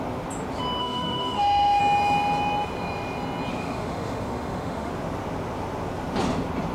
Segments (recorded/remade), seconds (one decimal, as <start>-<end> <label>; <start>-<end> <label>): 0.0-0.8 recorded; 0.8-1.8 remade; 1.8-3.5 recorded; 3.5-4.9 remade; 4.9-6.7 recorded